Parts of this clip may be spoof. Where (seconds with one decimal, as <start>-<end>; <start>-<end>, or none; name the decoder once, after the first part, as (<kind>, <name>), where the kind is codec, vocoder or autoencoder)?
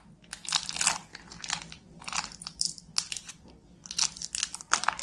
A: 1.1-3.5 (vocoder, BigVGAN v2)